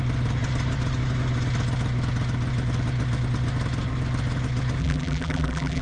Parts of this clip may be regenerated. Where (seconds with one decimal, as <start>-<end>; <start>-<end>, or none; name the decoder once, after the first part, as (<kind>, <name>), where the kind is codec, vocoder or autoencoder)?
4.8-5.8 (vocoder, BigVGAN v2)